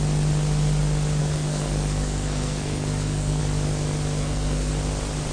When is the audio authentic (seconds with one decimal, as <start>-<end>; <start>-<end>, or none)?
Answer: 0.0-1.2; 3.4-4.2; 4.7-5.3